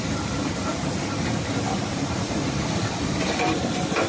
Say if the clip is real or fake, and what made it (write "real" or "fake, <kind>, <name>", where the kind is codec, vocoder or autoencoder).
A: fake, vocoder, BigVGAN v2